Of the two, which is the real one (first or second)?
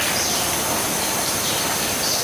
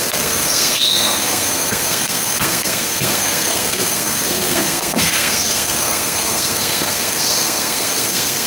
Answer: first